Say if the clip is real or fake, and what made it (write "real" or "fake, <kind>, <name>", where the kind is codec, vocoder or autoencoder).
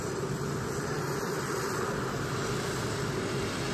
real